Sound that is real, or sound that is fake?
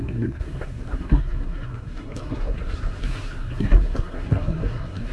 fake